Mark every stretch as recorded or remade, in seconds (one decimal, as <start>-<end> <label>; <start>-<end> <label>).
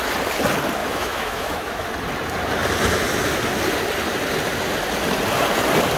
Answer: 0.0-0.8 recorded; 0.8-1.9 remade; 1.9-6.0 recorded